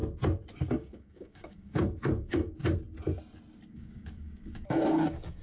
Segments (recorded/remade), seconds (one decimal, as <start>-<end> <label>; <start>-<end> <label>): 0.0-0.7 recorded; 0.7-2.6 remade; 2.6-3.7 recorded; 3.7-5.4 remade

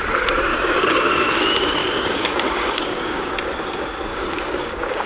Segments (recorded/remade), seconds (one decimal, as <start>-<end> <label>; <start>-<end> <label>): 0.0-0.5 recorded; 0.5-1.1 remade; 1.1-1.8 recorded; 1.8-3.3 remade; 3.3-4.1 recorded; 4.1-5.1 remade